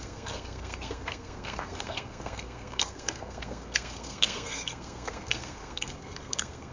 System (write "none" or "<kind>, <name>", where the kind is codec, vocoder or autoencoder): codec, SNAC